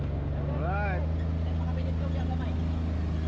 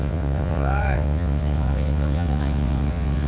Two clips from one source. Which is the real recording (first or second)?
first